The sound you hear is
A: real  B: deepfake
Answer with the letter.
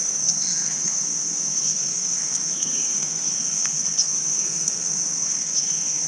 B